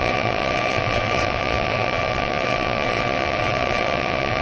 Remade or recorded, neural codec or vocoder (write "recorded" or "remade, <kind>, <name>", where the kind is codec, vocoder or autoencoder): remade, vocoder, WaveNeXt